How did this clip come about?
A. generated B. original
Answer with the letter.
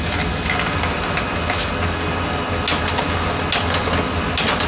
B